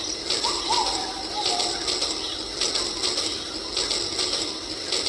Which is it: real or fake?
real